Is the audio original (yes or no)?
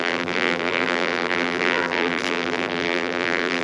no